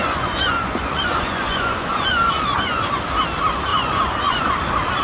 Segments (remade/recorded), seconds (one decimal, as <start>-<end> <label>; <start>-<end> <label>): 0.0-3.0 remade; 3.0-3.7 recorded; 3.7-4.5 remade; 4.5-5.0 recorded